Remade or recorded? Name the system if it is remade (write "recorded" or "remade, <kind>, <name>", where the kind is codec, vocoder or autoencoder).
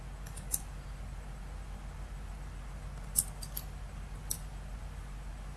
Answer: recorded